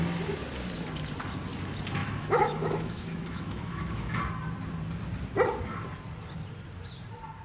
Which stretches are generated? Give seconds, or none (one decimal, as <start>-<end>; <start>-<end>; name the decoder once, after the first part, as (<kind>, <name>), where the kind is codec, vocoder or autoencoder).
2.0-4.2 (autoencoder, DAC-VAE)